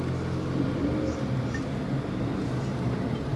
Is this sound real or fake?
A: real